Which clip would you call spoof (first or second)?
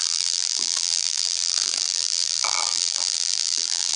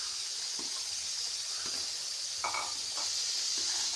first